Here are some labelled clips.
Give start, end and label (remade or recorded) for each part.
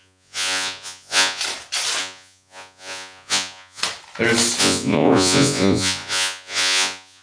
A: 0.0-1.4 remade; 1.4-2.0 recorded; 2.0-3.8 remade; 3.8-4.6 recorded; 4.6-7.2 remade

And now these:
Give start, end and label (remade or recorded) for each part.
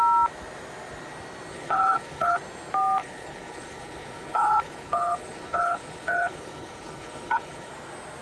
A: 0.0-1.5 recorded; 1.5-2.4 remade; 2.4-3.0 recorded; 3.0-7.7 remade; 7.7-8.2 recorded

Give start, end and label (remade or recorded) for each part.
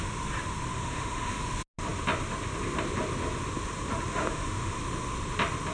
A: 0.0-0.7 recorded; 0.7-1.4 remade; 1.4-4.1 recorded; 4.1-4.8 remade; 4.8-5.7 recorded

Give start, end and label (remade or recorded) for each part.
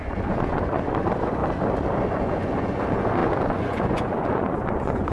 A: 0.0-1.4 remade; 1.4-2.1 recorded; 2.1-5.1 remade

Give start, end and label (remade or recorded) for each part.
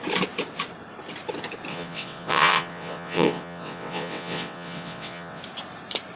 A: 0.0-1.7 recorded; 1.7-5.4 remade; 5.4-6.2 recorded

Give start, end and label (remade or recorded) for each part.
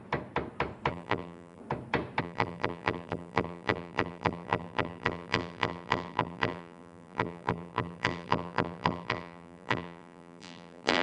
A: 0.0-0.9 recorded; 0.9-1.6 remade; 1.6-2.2 recorded; 2.2-11.0 remade